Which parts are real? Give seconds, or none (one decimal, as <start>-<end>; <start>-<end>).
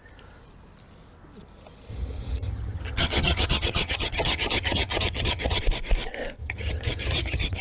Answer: 0.0-1.9; 5.6-6.4